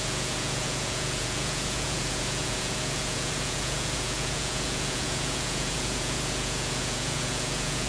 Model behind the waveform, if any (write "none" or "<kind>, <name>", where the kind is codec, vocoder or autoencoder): vocoder, Vocos